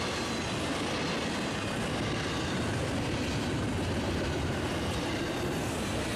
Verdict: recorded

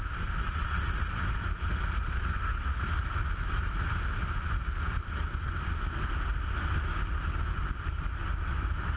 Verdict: recorded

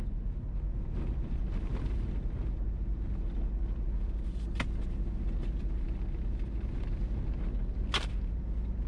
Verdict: recorded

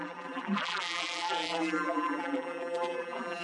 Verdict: remade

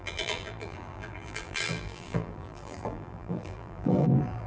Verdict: remade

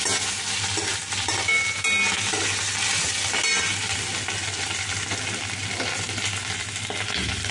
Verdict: recorded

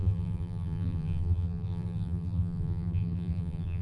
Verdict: remade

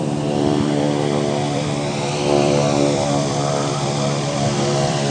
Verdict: remade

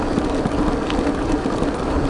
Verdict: recorded